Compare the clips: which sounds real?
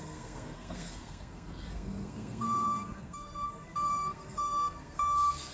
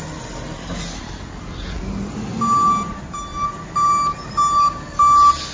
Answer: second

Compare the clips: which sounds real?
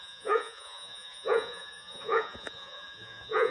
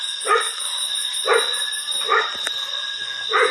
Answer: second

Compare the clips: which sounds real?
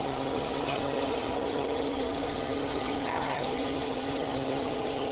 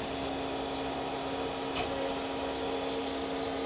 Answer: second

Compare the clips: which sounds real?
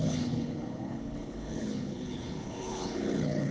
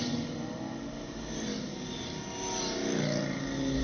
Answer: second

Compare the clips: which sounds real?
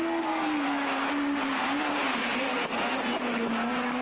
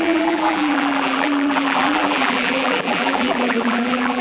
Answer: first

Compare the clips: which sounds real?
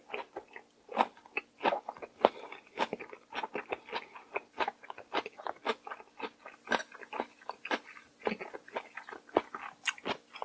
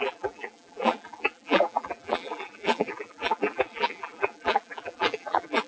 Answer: first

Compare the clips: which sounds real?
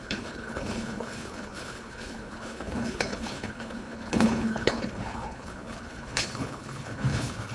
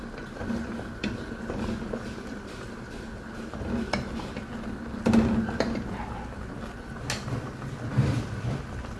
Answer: second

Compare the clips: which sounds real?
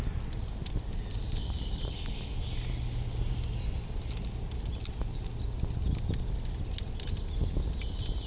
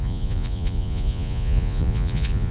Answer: first